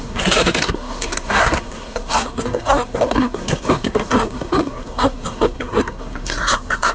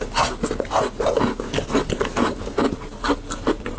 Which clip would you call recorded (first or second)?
second